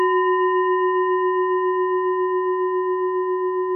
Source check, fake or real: real